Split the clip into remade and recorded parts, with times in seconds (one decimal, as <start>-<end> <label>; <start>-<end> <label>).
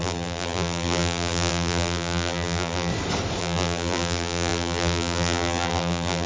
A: 0.0-2.9 remade; 2.9-3.4 recorded; 3.4-6.3 remade